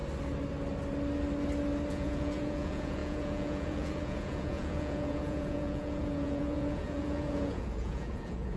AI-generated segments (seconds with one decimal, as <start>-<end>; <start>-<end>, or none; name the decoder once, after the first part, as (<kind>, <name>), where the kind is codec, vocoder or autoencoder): 1.9-8.6 (vocoder, Vocos)